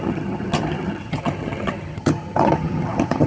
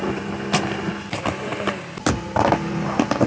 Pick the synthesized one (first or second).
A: first